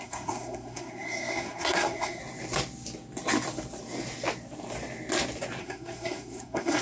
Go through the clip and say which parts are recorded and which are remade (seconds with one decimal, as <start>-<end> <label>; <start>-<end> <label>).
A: 0.0-2.2 remade; 2.2-5.6 recorded; 5.6-6.8 remade